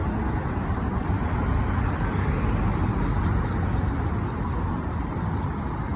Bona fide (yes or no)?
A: yes